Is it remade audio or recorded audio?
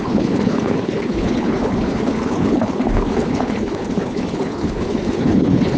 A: remade